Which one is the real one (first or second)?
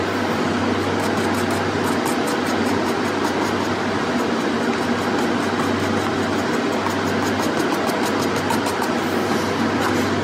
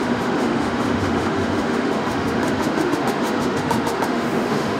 first